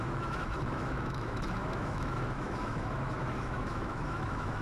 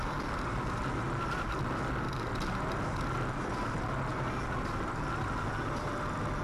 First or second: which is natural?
second